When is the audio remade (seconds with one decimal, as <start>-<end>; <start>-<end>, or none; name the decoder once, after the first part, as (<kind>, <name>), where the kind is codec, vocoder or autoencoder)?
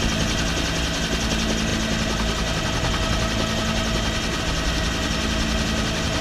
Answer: none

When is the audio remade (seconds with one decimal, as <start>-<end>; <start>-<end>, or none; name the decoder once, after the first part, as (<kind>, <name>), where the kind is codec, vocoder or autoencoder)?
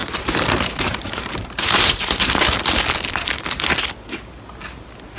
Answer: 0.0-2.3 (vocoder, BigVGAN v2)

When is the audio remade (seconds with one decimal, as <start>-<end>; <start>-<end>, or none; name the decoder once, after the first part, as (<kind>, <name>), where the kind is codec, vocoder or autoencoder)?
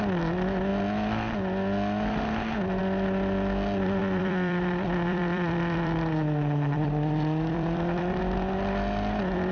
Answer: 4.0-8.2 (vocoder, BigVGAN v2)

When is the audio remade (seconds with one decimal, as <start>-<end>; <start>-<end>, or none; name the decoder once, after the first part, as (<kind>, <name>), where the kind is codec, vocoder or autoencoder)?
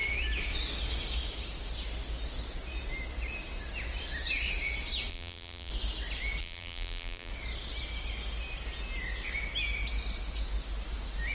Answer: 5.1-5.7 (vocoder, BigVGAN v2); 6.4-7.3